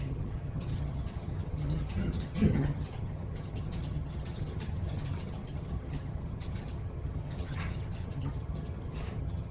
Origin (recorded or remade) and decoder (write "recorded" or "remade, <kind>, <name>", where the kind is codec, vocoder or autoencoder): remade, vocoder, HiFi-GAN